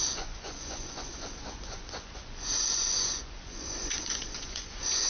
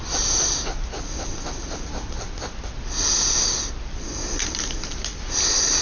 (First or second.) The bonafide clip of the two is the second